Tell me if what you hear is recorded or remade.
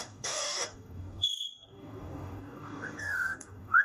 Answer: remade